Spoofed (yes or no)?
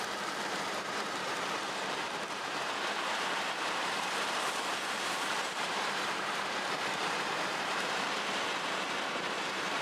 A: yes